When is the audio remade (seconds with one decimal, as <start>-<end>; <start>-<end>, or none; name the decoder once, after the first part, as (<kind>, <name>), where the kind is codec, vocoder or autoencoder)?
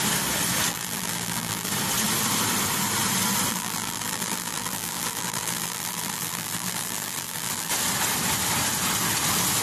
0.7-1.7 (vocoder, BigVGAN v2); 3.5-7.7